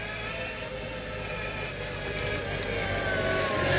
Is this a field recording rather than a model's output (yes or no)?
yes